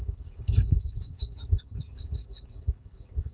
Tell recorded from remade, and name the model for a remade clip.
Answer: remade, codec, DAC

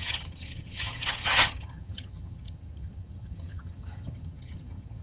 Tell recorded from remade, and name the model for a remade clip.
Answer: remade, vocoder, HiFi-GAN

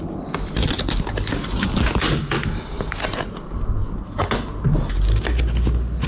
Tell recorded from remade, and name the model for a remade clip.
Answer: recorded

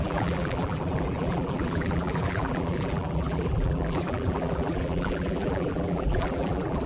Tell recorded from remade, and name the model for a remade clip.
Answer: remade, vocoder, BigVGAN v2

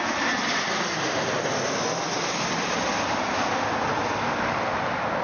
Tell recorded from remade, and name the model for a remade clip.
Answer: recorded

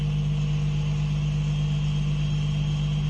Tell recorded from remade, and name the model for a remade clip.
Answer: recorded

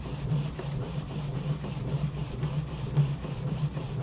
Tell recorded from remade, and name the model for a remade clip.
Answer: remade, vocoder, BigVGAN v2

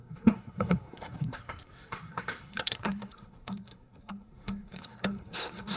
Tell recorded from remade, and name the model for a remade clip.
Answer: remade, codec, SNAC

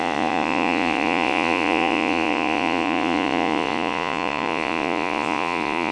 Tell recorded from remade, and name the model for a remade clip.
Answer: remade, vocoder, Vocos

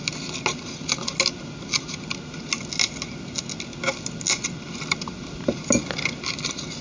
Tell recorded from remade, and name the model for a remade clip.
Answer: recorded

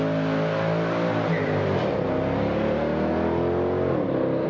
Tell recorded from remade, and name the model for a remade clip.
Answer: recorded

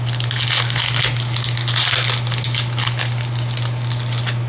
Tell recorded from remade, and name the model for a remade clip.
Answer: recorded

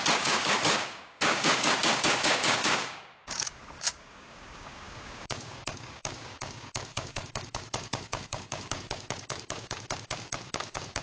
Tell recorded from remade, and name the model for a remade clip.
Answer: remade, codec, DAC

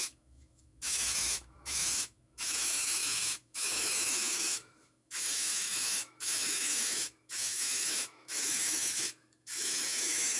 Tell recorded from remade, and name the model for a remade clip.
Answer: remade, autoencoder, DAC-VAE